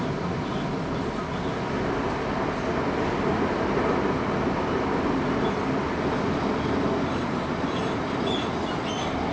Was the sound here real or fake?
real